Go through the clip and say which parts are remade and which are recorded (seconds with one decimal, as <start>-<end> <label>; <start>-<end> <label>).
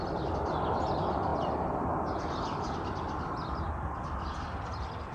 0.0-5.1 recorded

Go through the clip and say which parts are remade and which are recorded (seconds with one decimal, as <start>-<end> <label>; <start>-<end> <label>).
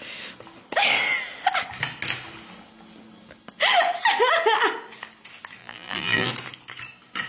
0.0-5.6 recorded; 5.6-6.3 remade; 6.3-7.3 recorded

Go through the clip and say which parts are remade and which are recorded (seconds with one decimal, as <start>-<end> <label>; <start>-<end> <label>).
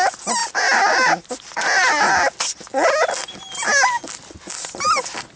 0.0-0.4 recorded; 0.4-1.3 remade; 1.3-5.4 recorded